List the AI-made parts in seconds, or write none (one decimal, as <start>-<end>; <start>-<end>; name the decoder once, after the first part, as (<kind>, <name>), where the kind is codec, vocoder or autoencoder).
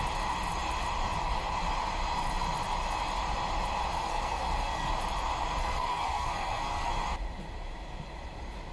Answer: 4.0-4.9 (codec, SNAC); 5.6-6.9